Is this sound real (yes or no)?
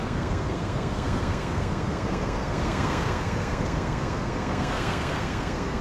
no